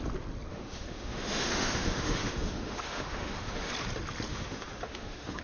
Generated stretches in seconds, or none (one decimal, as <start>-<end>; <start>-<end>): 0.5-3.7; 4.3-5.4